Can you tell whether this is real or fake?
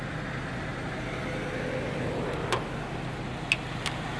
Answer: real